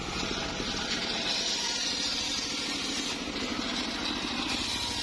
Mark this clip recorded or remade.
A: recorded